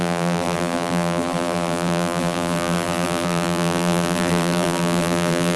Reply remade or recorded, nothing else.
remade